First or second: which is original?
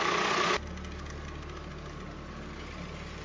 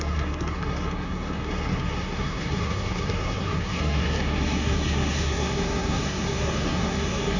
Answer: first